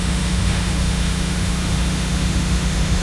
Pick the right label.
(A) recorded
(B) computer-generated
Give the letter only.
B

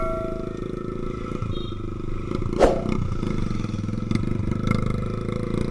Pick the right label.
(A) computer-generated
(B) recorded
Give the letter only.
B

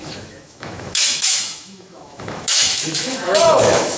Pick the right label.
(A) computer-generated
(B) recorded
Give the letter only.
A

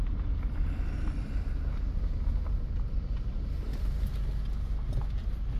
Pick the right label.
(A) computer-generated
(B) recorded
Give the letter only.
B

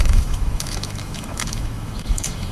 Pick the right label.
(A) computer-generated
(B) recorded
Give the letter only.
A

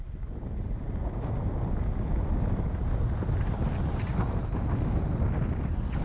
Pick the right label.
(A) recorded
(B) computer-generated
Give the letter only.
A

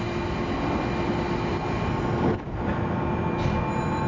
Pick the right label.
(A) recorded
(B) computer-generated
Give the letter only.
A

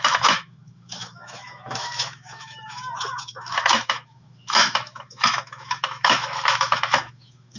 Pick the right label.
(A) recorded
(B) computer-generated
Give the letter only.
B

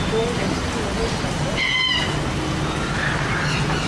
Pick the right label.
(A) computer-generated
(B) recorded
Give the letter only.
B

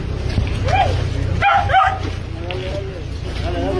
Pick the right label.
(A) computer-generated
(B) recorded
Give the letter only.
B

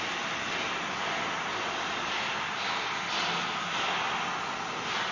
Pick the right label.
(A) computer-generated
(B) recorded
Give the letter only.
B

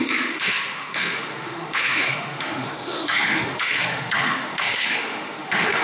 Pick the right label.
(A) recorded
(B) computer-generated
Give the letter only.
B